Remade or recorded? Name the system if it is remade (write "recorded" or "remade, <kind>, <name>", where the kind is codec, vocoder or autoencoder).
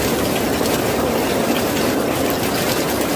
recorded